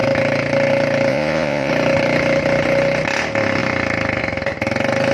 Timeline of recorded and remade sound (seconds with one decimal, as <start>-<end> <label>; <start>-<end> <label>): 0.0-1.1 recorded; 1.1-1.7 remade; 1.7-5.1 recorded